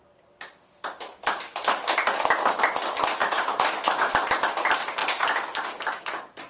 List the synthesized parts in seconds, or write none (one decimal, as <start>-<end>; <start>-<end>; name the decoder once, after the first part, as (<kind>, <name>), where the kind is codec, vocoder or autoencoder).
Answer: 3.2-4.1 (autoencoder, DAC-VAE)